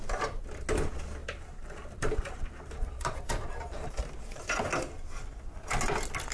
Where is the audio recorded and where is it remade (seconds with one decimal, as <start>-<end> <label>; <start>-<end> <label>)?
0.0-1.2 recorded; 1.2-4.1 remade; 4.1-6.3 recorded